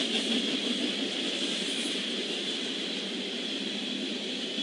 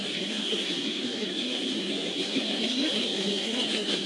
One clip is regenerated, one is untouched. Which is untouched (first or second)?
first